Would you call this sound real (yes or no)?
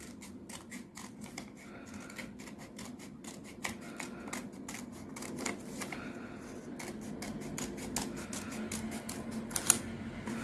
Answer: yes